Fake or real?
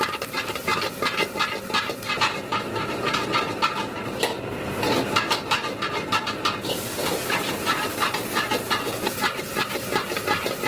real